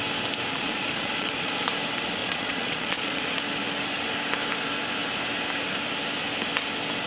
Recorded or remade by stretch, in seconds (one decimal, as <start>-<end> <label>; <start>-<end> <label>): 0.0-0.5 recorded; 0.5-1.7 remade; 1.7-2.2 recorded; 2.2-3.4 remade; 3.4-7.1 recorded

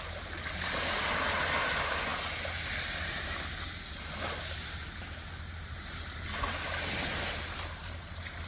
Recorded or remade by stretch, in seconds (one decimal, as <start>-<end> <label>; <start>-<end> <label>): 0.0-8.5 recorded